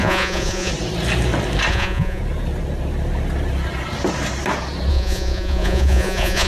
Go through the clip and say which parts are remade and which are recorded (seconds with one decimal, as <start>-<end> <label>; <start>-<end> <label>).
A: 0.0-0.7 remade; 0.7-1.7 recorded; 1.7-2.2 remade; 2.2-4.9 recorded; 4.9-6.5 remade